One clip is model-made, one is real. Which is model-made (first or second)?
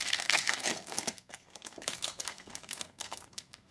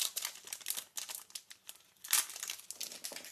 first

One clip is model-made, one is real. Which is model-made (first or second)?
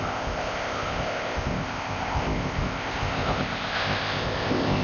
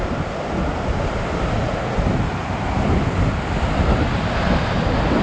first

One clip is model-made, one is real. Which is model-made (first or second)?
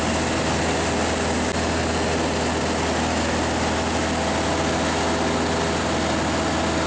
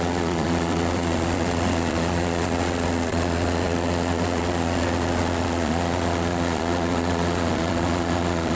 second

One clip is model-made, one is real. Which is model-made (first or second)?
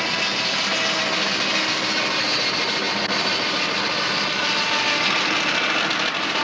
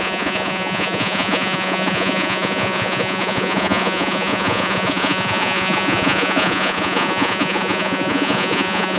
second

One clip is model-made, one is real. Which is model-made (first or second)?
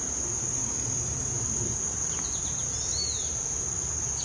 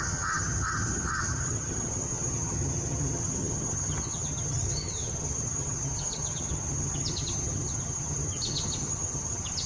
second